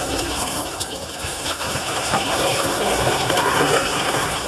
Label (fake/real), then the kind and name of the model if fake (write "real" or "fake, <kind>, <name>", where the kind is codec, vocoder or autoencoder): fake, codec, SNAC